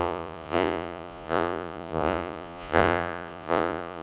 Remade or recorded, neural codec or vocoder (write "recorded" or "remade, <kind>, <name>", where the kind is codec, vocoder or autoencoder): remade, vocoder, Vocos